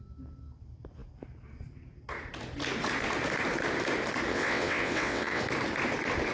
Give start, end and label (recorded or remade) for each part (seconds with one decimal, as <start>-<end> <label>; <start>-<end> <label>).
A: 0.0-4.3 recorded; 4.3-5.4 remade; 5.4-6.3 recorded